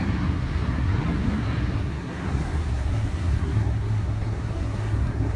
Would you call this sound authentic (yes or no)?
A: no